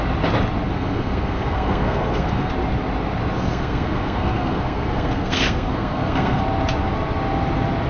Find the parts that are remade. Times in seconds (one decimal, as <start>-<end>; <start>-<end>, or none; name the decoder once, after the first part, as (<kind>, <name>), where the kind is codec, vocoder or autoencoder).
0.7-2.5 (codec, SNAC); 3.4-6.4